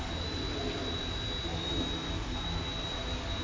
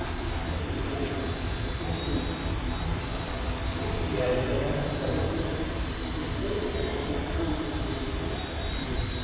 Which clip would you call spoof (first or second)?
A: second